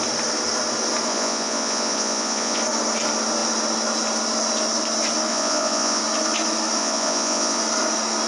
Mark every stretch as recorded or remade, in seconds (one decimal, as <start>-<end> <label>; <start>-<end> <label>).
0.0-1.1 recorded; 1.1-2.6 remade; 2.6-5.3 recorded; 5.3-6.0 remade; 6.0-6.8 recorded; 6.8-7.6 remade; 7.6-8.3 recorded